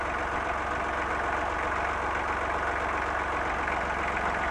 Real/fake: real